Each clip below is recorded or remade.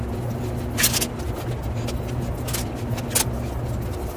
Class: recorded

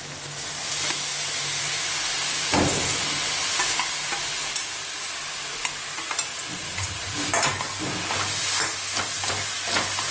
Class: recorded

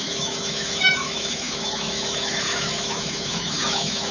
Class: remade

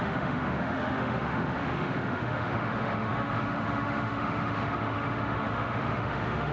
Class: remade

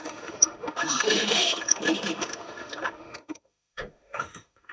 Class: remade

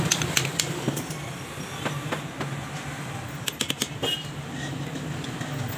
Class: recorded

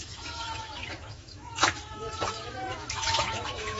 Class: remade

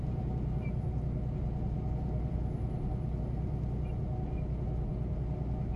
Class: recorded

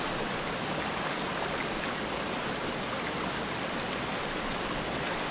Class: recorded